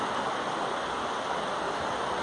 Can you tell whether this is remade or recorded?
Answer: recorded